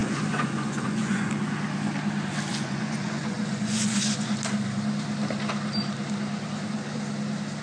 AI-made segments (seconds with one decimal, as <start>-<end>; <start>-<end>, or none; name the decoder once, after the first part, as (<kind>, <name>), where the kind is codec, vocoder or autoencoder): 0.0-1.3 (vocoder, Vocos); 2.5-4.3